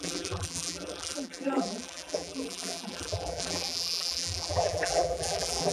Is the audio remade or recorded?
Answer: remade